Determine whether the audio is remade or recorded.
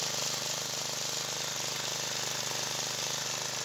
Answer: recorded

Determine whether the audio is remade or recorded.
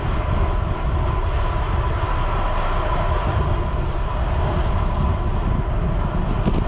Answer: recorded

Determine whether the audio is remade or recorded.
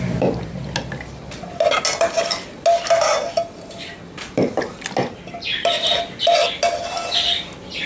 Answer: recorded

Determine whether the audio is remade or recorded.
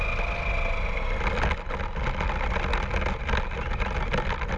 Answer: recorded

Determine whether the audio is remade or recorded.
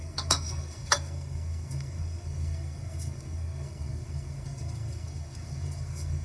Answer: remade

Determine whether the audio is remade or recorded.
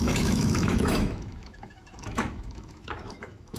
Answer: remade